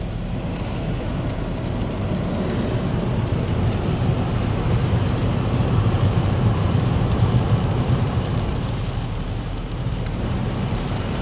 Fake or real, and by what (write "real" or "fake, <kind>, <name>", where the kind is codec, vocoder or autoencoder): fake, vocoder, BigVGAN v2